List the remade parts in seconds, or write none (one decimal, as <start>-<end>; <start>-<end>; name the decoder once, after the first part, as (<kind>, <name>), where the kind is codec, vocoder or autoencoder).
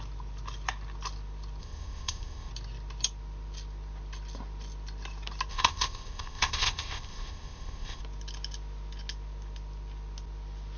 1.6-2.5 (codec, ZipCodec); 5.5-8.0